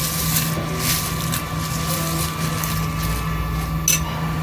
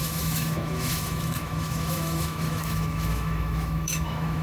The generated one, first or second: second